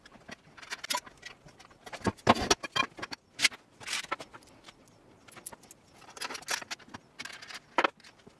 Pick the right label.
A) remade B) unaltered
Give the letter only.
B